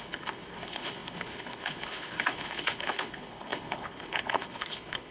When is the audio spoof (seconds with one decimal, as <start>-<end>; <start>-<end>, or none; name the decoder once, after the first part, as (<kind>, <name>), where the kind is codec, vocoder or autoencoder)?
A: 0.0-5.1 (codec, HILCodec)